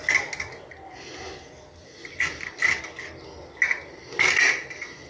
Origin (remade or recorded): recorded